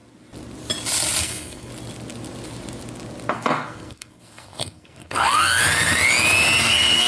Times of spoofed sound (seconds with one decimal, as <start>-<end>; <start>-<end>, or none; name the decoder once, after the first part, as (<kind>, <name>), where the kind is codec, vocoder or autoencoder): 1.2-1.7 (codec, SNAC); 3.3-5.6; 6.6-7.1